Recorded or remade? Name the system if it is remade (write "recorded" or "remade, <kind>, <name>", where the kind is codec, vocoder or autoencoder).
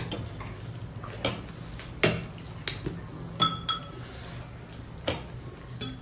recorded